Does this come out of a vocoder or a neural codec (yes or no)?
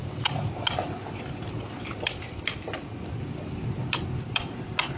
no